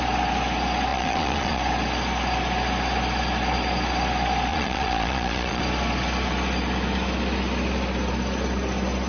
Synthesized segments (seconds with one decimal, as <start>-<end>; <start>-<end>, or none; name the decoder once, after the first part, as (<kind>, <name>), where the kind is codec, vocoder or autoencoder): 0.9-1.6 (vocoder, Vocos); 4.5-5.6